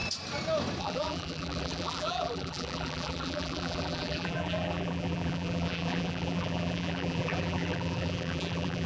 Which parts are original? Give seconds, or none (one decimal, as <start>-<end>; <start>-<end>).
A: 0.0-0.8